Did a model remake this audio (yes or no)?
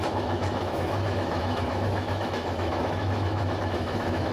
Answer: yes